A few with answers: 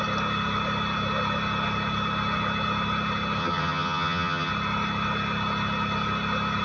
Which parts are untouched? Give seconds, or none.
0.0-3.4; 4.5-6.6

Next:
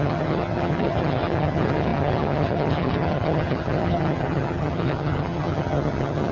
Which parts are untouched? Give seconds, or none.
none